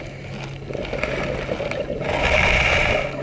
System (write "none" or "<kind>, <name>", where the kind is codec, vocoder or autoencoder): none